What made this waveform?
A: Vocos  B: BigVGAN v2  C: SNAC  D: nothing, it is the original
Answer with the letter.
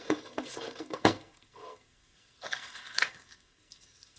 C